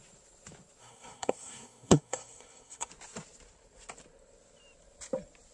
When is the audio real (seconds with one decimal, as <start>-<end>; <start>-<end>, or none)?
0.0-0.8; 2.9-5.5